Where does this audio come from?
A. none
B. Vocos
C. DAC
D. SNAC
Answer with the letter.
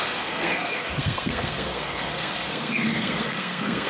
D